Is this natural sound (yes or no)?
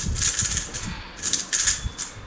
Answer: yes